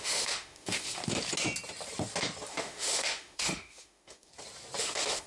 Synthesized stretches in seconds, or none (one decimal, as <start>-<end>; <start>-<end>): 0.0-1.0; 2.5-4.3; 4.8-5.3